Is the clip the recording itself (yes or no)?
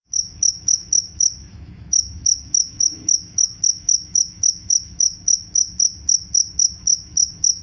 no